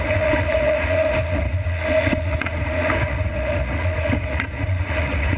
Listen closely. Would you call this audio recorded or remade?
remade